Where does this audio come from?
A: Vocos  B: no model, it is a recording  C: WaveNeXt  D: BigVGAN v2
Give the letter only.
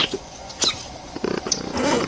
A